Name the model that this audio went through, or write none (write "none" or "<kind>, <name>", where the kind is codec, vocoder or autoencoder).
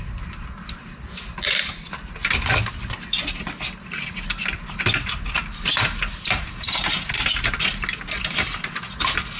none